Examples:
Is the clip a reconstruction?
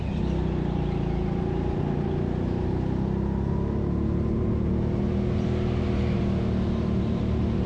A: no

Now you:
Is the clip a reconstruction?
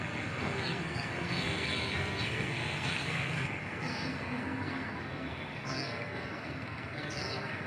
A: yes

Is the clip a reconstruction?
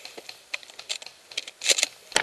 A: no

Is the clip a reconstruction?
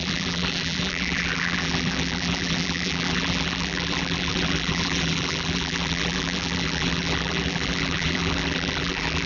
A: yes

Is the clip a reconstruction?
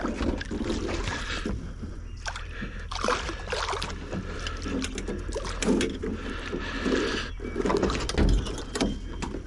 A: no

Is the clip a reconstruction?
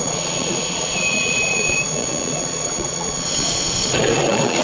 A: yes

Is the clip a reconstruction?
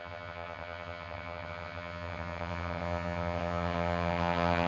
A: yes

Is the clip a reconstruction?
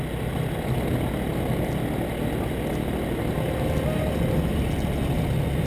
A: no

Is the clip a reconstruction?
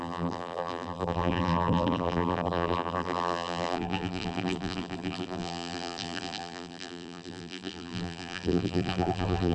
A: yes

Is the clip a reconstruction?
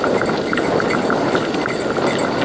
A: no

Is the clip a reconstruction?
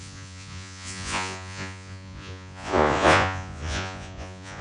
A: yes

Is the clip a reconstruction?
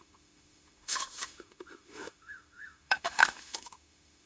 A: yes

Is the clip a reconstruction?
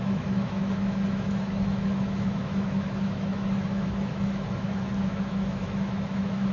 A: yes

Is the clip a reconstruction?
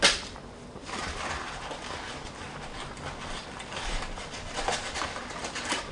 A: no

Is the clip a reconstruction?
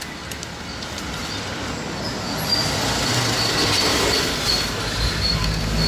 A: no